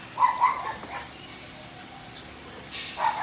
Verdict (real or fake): real